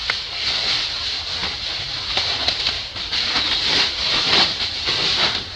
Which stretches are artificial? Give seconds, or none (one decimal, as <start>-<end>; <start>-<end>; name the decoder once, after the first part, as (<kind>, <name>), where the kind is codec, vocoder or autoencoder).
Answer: 1.4-4.8 (vocoder, BigVGAN v2)